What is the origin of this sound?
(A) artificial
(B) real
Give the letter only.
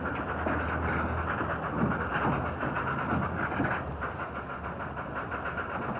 B